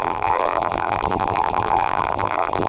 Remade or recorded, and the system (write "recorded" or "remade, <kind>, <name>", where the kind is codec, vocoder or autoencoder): remade, vocoder, BigVGAN v2